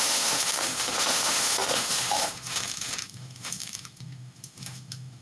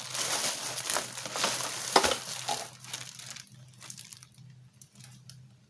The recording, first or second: second